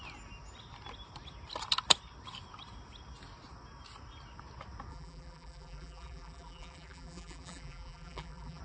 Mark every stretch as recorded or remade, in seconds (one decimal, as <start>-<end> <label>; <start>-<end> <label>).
0.0-4.9 recorded; 4.9-8.6 remade